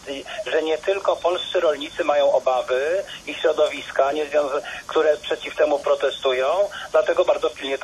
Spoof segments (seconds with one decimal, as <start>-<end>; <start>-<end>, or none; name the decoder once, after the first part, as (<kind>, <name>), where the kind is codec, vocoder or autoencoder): none